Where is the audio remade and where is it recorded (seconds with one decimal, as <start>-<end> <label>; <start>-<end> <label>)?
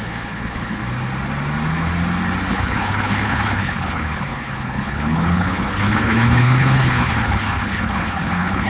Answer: 0.0-0.8 remade; 0.8-2.5 recorded; 2.5-8.7 remade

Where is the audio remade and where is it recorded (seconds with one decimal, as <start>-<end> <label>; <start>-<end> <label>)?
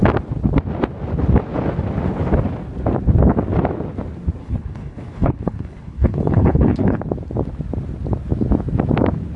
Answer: 0.0-4.4 recorded; 4.4-7.0 remade; 7.0-9.4 recorded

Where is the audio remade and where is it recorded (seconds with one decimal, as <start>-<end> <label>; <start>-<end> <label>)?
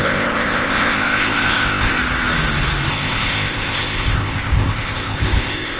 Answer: 0.0-2.0 remade; 2.0-2.9 recorded; 2.9-5.8 remade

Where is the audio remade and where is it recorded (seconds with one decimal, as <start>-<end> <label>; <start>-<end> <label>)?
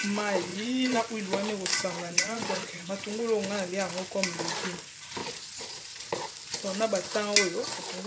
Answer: 0.0-0.5 recorded; 0.5-1.0 remade; 1.0-1.7 recorded; 1.7-2.9 remade; 2.9-5.2 recorded; 5.2-6.3 remade; 6.3-8.1 recorded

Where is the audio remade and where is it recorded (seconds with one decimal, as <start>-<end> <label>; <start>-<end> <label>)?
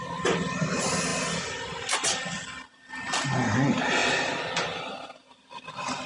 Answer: 0.0-6.1 recorded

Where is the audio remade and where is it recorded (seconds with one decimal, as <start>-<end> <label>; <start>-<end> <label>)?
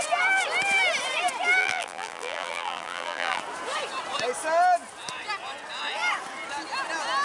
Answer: 0.0-1.6 recorded; 1.6-3.4 remade; 3.4-7.2 recorded